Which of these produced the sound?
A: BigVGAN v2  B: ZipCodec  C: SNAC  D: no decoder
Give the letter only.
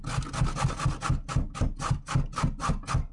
D